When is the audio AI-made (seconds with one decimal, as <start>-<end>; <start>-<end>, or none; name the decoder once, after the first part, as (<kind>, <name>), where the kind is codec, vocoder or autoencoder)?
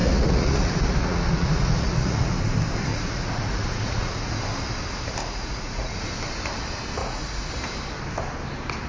0.0-2.4 (vocoder, Vocos); 2.9-4.3; 5.2-6.0; 7.0-7.5